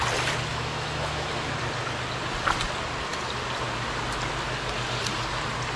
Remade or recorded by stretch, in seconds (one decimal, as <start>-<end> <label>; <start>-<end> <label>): 0.0-0.5 recorded; 0.5-1.5 remade; 1.5-5.8 recorded